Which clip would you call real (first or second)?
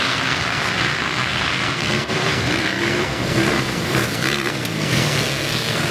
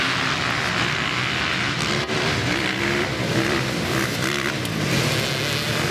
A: second